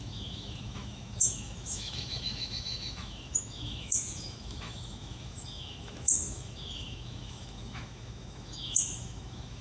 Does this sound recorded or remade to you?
remade